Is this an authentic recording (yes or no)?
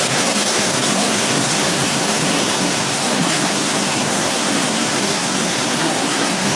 no